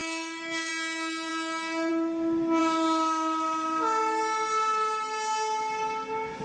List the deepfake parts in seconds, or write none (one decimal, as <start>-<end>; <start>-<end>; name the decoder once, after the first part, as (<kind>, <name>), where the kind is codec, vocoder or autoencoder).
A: 0.0-0.7 (autoencoder, DAC-VAE)